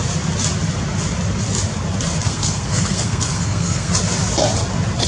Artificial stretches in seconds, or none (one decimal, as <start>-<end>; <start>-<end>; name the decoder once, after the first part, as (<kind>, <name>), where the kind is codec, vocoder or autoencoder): 2.2-3.9 (codec, SNAC)

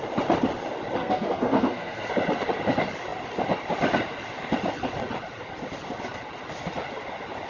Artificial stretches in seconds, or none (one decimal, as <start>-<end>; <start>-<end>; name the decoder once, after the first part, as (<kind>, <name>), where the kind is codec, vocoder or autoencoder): 1.0-2.1 (codec, SNAC)

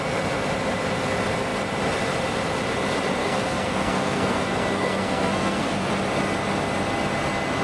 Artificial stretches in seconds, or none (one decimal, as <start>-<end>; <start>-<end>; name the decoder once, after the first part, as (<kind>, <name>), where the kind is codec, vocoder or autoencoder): 3.2-5.9 (codec, SNAC)

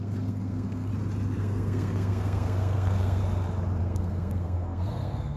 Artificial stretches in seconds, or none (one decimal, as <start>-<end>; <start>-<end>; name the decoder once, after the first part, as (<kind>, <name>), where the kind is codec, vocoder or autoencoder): 0.0-0.9 (codec, SNAC); 1.4-3.2; 3.8-5.4

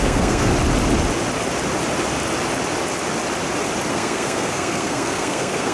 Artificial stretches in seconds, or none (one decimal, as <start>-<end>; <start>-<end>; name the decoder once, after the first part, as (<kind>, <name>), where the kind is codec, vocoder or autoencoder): 0.0-0.5 (codec, SNAC); 3.9-5.7

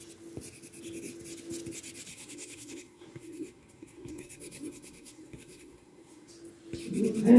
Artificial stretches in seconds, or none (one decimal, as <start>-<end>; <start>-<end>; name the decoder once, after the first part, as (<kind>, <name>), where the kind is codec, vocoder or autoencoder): 2.1-6.3 (codec, SNAC)